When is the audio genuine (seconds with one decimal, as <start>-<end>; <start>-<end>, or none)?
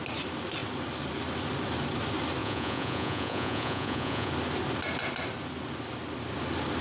0.0-2.4; 4.3-6.8